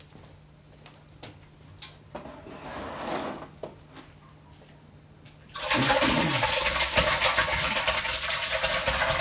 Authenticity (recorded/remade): recorded